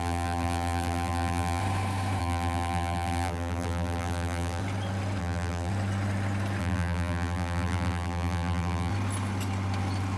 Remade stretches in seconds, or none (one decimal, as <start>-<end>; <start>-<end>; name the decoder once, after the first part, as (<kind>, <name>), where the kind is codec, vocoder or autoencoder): 0.0-1.6 (vocoder, BigVGAN v2); 2.2-4.6; 5.2-5.7; 6.6-8.9